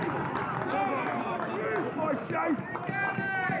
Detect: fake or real real